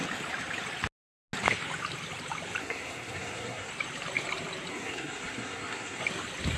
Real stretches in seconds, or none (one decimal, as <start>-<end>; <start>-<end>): 0.0-2.6; 3.7-4.7; 6.0-6.6